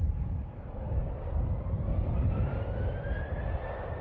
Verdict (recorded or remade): recorded